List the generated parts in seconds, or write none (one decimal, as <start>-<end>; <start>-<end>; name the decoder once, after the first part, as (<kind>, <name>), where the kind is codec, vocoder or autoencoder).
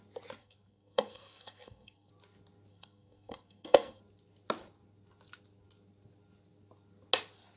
0.4-2.1 (codec, SNAC); 2.7-4.0